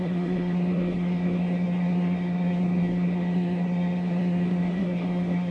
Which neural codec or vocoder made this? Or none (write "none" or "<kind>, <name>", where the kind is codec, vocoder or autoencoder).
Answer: codec, SNAC